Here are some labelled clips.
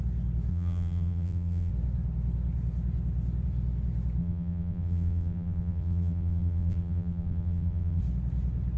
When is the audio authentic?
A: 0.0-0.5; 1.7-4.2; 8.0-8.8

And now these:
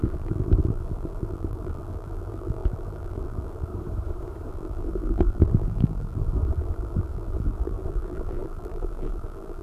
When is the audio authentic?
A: 3.7-4.5

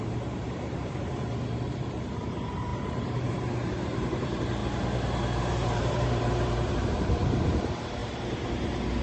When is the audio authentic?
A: 4.6-5.4

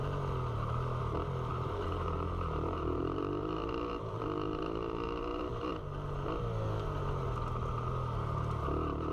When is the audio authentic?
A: 0.0-1.5; 5.7-9.1

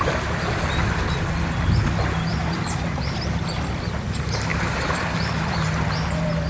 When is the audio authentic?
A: 0.0-2.3; 3.0-4.5; 5.8-6.5

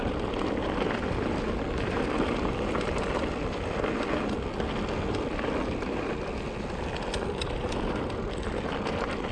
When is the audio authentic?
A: 0.0-0.6; 3.8-9.3

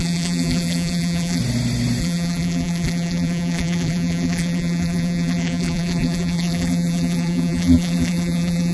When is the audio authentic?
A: 1.4-2.0